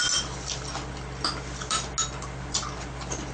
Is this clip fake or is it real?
real